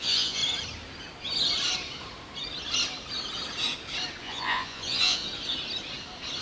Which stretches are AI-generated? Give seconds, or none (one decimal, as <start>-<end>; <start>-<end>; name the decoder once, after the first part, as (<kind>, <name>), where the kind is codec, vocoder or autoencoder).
0.0-0.4 (vocoder, Vocos); 4.2-5.2